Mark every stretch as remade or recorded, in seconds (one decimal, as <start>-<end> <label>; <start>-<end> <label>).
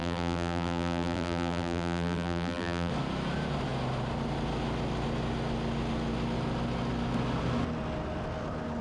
0.0-2.9 remade; 2.9-8.8 recorded